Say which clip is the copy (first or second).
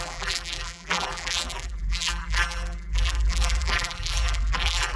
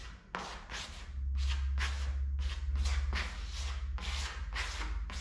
first